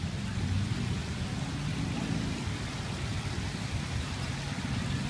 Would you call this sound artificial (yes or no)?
no